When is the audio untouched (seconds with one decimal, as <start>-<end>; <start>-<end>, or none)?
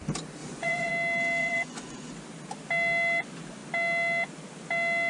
0.0-0.4; 0.9-1.4; 2.1-5.1